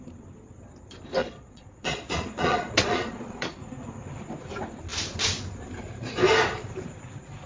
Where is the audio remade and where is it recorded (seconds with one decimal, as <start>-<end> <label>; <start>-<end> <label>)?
0.0-1.2 recorded; 1.2-3.5 remade; 3.5-7.5 recorded